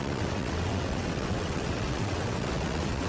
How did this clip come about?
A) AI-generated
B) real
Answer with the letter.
A